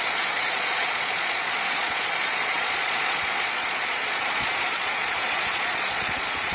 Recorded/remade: remade